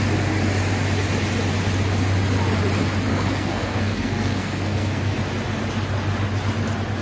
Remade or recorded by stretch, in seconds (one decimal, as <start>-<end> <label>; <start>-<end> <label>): 0.0-3.1 recorded; 3.1-5.2 remade; 5.2-7.0 recorded